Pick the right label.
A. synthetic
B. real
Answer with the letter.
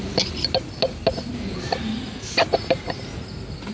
B